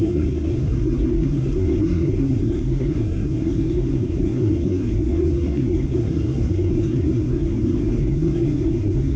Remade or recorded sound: remade